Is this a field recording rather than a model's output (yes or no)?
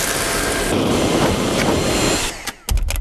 yes